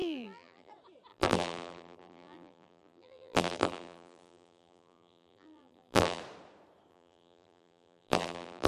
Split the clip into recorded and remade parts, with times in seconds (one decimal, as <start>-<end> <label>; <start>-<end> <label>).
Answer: 0.0-0.7 remade; 0.7-1.1 recorded; 1.1-6.2 remade; 6.2-6.9 recorded; 6.9-8.7 remade